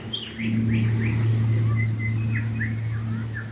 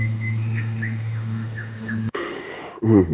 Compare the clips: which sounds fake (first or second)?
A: second